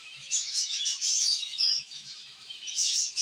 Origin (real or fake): fake